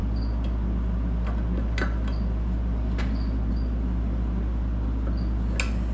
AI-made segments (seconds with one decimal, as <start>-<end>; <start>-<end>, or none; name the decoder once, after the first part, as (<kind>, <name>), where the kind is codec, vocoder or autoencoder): none